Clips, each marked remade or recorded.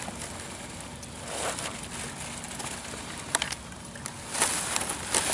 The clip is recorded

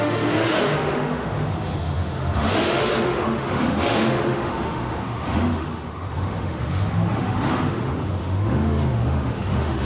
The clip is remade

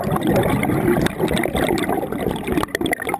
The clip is recorded